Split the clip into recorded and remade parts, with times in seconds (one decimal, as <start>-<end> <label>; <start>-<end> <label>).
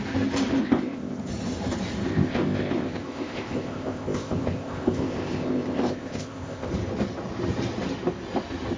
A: 0.0-0.6 recorded; 0.6-1.3 remade; 1.3-2.1 recorded; 2.1-6.7 remade; 6.7-8.8 recorded